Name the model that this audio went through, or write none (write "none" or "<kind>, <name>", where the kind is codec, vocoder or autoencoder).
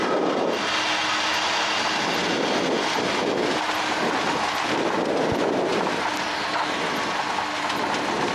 none